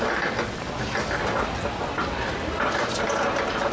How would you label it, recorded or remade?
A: recorded